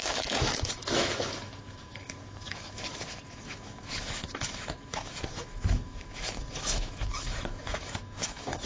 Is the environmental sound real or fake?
fake